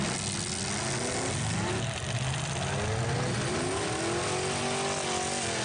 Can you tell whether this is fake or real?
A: real